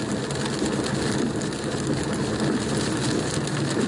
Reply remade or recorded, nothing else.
recorded